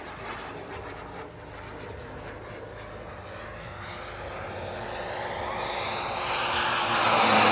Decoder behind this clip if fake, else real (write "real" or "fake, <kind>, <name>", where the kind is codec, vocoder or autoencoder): real